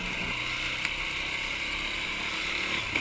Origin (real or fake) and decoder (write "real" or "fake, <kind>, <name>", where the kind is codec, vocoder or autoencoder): real